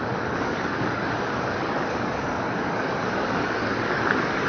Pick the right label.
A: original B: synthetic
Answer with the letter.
B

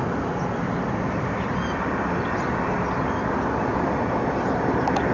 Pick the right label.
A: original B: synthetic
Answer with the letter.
A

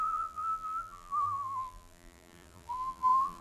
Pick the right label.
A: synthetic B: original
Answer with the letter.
A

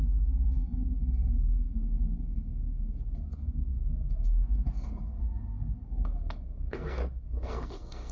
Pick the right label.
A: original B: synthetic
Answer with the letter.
B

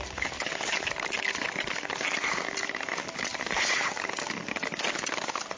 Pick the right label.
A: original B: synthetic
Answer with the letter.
A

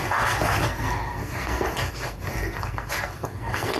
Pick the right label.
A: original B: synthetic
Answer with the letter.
B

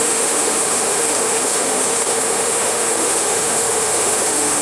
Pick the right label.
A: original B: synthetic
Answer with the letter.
B